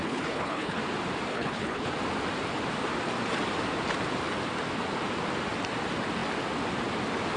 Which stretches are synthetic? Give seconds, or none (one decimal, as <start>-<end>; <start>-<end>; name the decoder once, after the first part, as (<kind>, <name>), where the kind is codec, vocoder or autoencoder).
0.0-0.8 (codec, HILCodec); 1.3-1.9